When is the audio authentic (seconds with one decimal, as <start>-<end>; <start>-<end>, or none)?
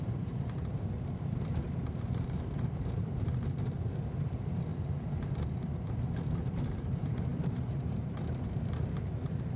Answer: 4.7-6.3